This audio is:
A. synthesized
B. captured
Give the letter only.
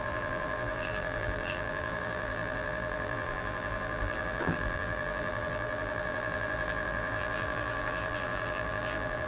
A